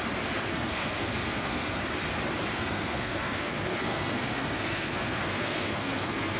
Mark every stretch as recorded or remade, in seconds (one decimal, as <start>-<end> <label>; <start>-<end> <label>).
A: 0.0-0.5 recorded; 0.5-1.8 remade; 1.8-2.5 recorded; 2.5-6.4 remade